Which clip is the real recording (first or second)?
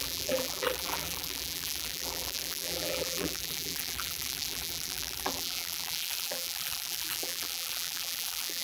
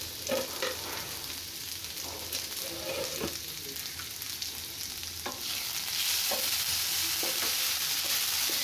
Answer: second